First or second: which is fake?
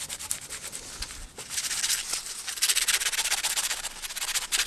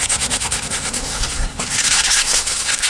second